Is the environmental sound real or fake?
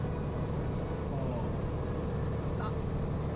real